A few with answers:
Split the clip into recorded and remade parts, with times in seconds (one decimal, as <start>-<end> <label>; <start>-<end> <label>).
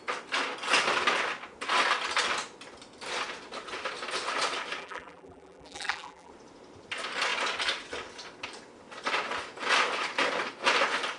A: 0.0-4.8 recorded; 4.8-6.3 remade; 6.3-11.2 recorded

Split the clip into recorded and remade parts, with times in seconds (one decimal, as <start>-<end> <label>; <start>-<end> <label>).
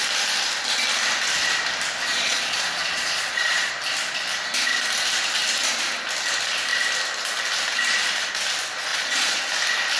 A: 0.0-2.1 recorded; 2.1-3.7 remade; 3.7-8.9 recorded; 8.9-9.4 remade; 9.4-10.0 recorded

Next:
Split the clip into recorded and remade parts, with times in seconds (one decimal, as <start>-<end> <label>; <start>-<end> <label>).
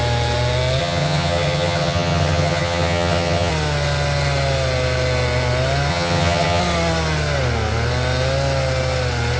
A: 0.0-0.8 recorded; 0.8-3.5 remade; 3.5-5.9 recorded; 5.9-6.6 remade; 6.6-9.4 recorded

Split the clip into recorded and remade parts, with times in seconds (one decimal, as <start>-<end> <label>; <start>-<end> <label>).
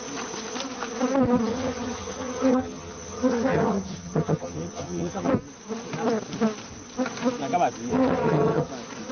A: 0.0-1.5 recorded; 1.5-5.3 remade; 5.3-7.9 recorded; 7.9-8.7 remade; 8.7-9.1 recorded